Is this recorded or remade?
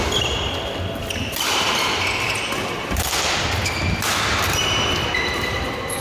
recorded